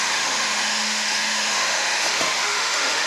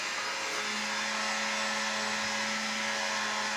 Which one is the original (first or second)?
second